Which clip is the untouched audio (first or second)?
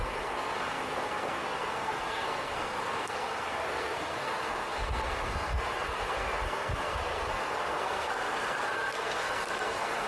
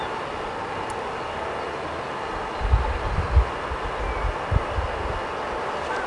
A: second